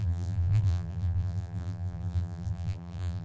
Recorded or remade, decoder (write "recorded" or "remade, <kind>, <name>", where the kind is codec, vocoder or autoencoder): remade, vocoder, BigVGAN v2